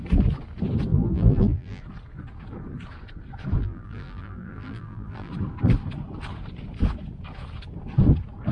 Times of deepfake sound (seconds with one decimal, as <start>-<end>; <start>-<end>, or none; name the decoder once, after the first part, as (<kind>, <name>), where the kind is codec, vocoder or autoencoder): 0.9-1.8 (vocoder, BigVGAN v2); 3.6-5.3